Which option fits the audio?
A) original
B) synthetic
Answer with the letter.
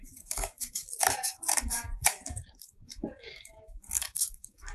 B